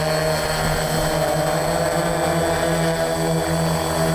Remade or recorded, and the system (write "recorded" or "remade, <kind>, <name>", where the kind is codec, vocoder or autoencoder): recorded